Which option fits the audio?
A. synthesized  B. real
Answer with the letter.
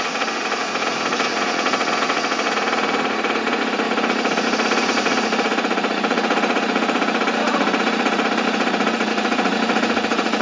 A